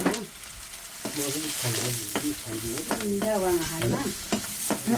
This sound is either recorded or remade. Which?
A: recorded